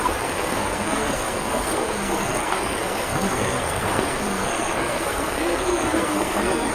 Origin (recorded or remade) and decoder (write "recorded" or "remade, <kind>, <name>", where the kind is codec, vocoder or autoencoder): remade, codec, SNAC